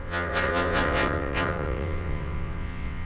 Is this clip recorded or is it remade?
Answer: remade